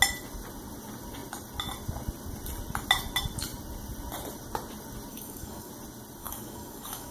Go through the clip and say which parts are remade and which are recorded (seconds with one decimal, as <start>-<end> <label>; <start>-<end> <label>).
0.0-5.1 recorded; 5.1-5.7 remade; 5.7-6.2 recorded; 6.2-7.1 remade